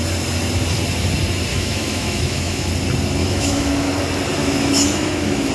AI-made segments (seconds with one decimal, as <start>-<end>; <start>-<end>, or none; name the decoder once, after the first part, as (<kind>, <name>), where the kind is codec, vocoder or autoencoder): 1.5-2.7 (autoencoder, DAC-VAE); 3.2-3.9; 4.4-5.5